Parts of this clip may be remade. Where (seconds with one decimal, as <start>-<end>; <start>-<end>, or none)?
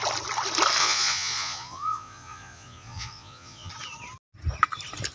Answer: 0.8-3.7